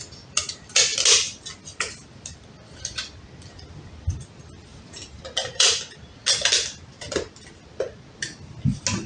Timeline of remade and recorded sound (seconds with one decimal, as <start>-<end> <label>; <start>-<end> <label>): 0.0-4.7 recorded; 4.7-5.8 remade; 5.8-9.1 recorded